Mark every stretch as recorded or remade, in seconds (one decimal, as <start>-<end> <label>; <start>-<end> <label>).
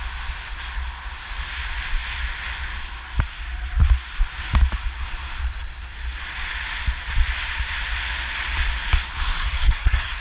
0.0-9.4 recorded; 9.4-10.2 remade